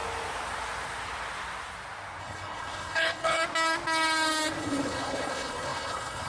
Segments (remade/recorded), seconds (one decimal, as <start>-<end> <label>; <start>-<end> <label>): 0.0-2.2 recorded; 2.2-3.4 remade; 3.4-4.6 recorded; 4.6-6.3 remade